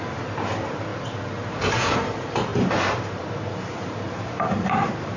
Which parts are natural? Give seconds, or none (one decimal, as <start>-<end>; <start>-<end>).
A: 0.9-1.5